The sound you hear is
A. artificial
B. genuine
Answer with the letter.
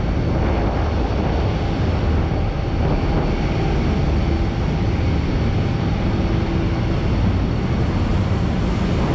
B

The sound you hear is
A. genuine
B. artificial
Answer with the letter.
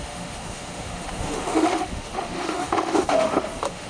B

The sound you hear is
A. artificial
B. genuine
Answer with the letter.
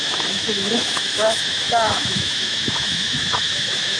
A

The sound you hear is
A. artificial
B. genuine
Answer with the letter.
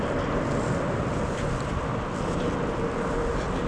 B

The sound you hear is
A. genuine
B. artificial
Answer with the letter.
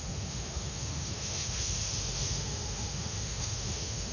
B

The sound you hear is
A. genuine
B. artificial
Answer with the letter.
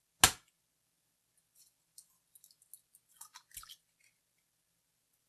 A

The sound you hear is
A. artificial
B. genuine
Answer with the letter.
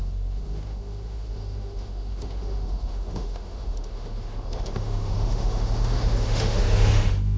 A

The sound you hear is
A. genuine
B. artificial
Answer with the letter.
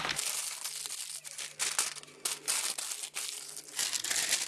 A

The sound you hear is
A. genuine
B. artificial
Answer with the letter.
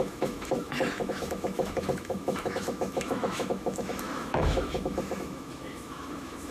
B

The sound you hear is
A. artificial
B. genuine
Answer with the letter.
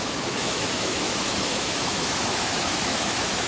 A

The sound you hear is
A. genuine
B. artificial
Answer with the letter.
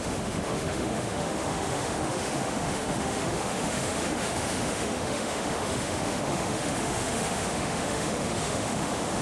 B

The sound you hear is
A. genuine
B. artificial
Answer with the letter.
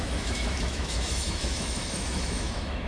B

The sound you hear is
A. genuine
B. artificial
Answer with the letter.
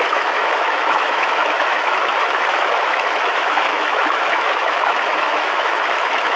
B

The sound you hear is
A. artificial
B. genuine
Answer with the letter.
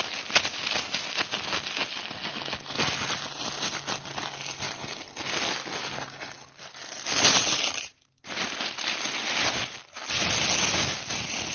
B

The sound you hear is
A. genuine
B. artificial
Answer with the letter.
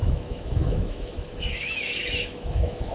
B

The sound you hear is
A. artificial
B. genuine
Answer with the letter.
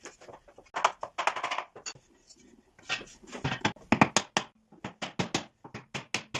B